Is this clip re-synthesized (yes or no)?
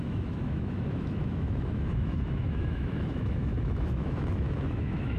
yes